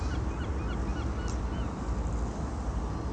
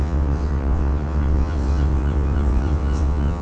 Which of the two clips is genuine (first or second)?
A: first